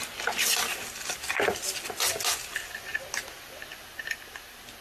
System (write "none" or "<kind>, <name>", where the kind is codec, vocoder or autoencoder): none